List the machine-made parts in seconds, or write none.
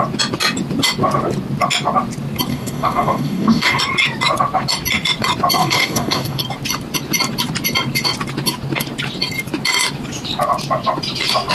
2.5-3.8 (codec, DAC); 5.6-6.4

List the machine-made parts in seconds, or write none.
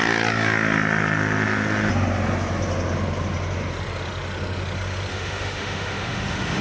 5.1-6.6 (autoencoder, DAC-VAE)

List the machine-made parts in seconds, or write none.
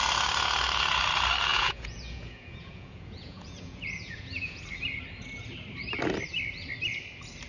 1.5-4.6 (vocoder, Vocos)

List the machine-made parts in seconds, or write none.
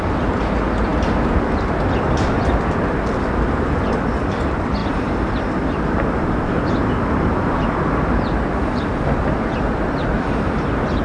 4.8-8.8 (vocoder, BigVGAN v2)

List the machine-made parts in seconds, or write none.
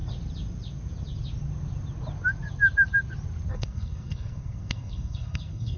3.5-5.8 (codec, SNAC)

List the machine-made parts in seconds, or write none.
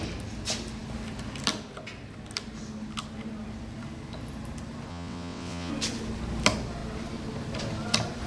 4.9-5.7 (vocoder, WaveNeXt)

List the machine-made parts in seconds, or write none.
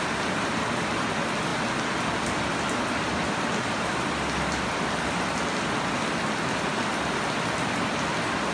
none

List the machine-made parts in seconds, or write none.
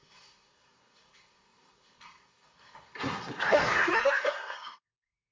0.0-5.3 (codec, SNAC)